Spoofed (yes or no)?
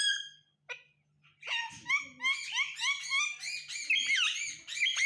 no